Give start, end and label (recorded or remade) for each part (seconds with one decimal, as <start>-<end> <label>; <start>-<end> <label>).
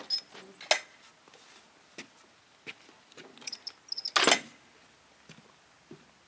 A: 0.0-6.3 recorded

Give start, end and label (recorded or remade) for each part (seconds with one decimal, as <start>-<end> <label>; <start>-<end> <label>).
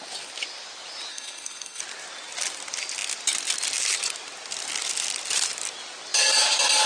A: 0.0-1.1 recorded; 1.1-1.8 remade; 1.8-6.9 recorded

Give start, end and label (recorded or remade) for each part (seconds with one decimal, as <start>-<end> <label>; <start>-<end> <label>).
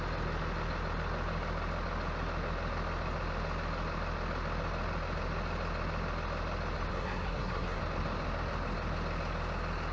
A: 0.0-6.9 recorded; 6.9-7.8 remade; 7.8-9.9 recorded